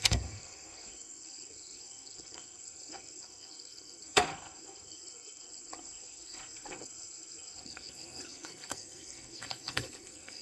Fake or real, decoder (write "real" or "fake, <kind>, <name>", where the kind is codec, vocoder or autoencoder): fake, codec, SNAC